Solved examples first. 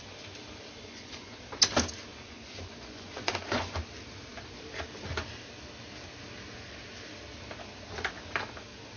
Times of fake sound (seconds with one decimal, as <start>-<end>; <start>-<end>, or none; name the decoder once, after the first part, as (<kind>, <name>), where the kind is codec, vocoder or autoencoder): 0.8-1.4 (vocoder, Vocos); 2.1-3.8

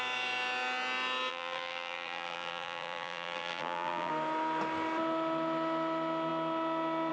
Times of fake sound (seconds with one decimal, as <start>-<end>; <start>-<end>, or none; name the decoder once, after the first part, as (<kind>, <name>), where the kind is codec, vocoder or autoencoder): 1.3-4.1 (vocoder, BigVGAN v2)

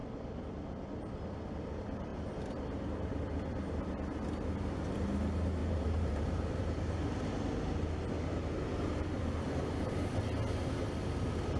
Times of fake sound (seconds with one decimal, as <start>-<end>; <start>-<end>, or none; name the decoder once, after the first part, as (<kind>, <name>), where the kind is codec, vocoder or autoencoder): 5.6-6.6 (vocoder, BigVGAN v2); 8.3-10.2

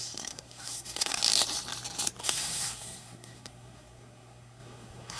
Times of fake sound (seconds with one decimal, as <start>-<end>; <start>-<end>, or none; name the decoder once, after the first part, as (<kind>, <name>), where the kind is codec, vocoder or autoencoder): 0.0-1.2 (codec, SNAC); 2.2-5.2